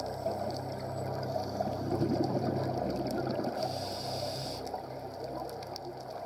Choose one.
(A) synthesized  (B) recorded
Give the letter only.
A